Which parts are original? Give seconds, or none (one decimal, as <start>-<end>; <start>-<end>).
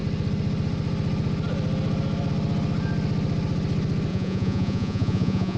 0.0-4.1